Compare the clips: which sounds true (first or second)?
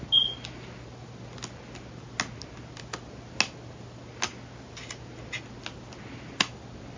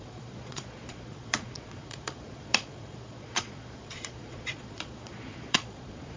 first